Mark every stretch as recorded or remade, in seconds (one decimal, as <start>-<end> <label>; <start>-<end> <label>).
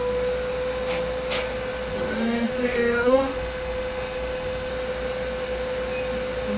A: 0.0-1.9 recorded; 1.9-4.7 remade; 4.7-6.6 recorded